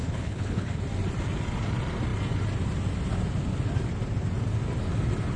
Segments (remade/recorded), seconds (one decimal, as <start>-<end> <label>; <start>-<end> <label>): 0.0-0.8 remade; 0.8-5.4 recorded